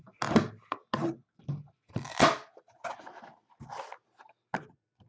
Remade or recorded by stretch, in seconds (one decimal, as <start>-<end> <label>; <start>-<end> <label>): 0.0-5.1 recorded

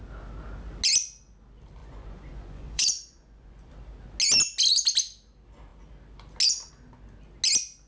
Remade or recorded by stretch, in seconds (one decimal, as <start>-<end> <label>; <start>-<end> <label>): 0.0-1.8 recorded; 1.8-3.7 remade; 3.7-7.9 recorded